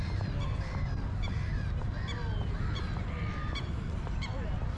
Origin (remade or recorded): recorded